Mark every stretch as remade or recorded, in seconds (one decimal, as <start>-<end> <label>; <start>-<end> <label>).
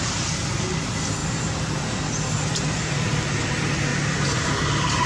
0.0-1.2 recorded; 1.2-1.8 remade; 1.8-2.5 recorded; 2.5-3.5 remade; 3.5-3.9 recorded; 3.9-5.1 remade